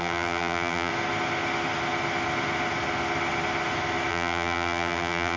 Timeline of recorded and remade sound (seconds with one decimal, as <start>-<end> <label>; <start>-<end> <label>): 0.0-0.9 remade; 0.9-4.1 recorded; 4.1-5.4 remade